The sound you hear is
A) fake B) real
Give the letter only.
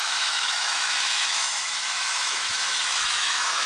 A